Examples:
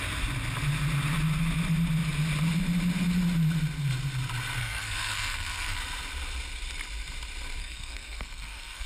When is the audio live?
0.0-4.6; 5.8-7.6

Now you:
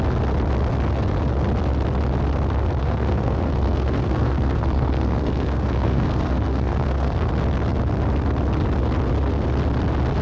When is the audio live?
0.0-2.8; 7.3-10.2

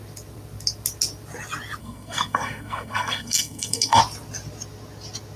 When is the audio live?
0.0-1.8; 4.0-5.4

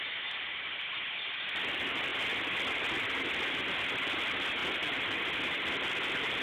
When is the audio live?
0.0-6.4

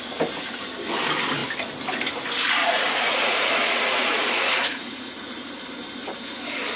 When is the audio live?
0.0-2.6; 5.5-6.8

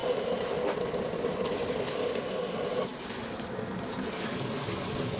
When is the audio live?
0.0-5.2

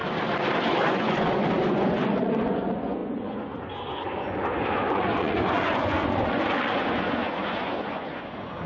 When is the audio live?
0.0-0.9

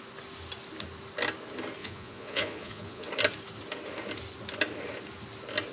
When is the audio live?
0.0-1.8; 3.1-5.7